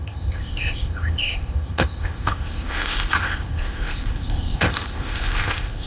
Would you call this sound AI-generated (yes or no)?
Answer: yes